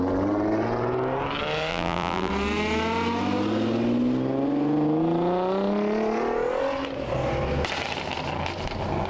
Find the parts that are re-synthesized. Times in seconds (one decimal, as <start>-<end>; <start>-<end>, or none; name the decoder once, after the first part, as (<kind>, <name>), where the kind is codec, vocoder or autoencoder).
1.7-2.3 (vocoder, BigVGAN v2)